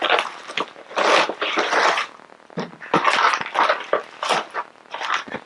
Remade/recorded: recorded